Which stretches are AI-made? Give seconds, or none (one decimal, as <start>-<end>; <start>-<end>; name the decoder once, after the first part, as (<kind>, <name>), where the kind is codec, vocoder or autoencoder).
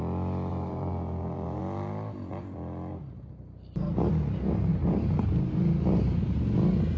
0.5-1.6 (vocoder, BigVGAN v2); 2.9-4.1; 4.7-5.5